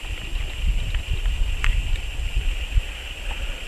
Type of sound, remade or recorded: recorded